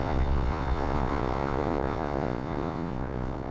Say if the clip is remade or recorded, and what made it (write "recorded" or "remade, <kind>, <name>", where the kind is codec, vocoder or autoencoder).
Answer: remade, vocoder, Vocos